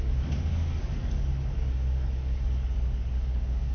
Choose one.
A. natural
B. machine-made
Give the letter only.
B